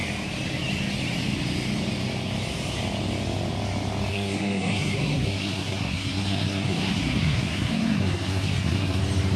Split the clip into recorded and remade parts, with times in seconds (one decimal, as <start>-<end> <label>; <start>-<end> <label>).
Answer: 0.0-4.1 recorded; 4.1-9.0 remade; 9.0-9.4 recorded